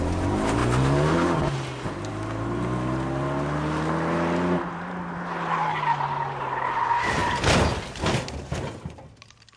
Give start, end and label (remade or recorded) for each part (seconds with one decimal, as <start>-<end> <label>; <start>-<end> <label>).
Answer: 0.0-9.6 recorded